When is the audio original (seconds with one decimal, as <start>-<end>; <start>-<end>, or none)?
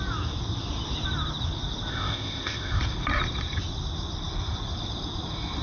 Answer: 0.0-1.9; 2.8-5.6